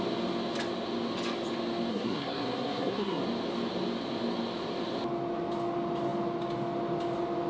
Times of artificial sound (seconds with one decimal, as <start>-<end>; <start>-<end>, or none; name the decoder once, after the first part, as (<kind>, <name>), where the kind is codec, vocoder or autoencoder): 1.9-3.2 (codec, SNAC)